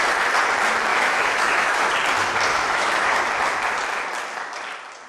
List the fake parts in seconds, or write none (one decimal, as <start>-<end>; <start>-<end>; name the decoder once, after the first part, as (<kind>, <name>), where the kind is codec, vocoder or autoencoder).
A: 0.9-1.9 (autoencoder, DAC-VAE); 2.5-3.2